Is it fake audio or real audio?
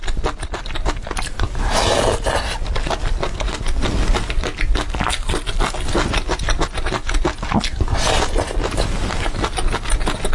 real